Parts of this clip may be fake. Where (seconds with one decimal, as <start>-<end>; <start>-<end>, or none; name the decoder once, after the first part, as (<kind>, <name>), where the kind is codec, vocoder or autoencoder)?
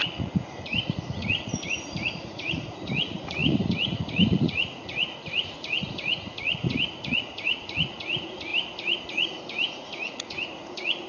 0.0-8.5 (vocoder, Vocos); 9.0-11.1